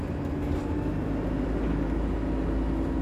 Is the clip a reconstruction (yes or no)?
no